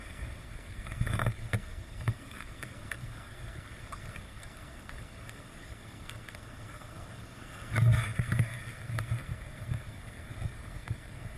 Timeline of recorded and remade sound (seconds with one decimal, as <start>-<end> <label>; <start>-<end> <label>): 0.0-11.4 remade